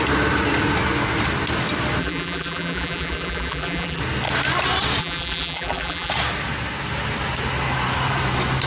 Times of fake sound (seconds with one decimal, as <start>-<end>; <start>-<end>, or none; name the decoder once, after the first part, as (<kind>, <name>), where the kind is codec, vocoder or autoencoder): 2.0-4.0 (vocoder, BigVGAN v2); 5.0-6.1